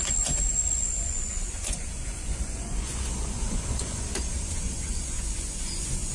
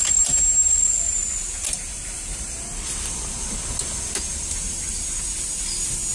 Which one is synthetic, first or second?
first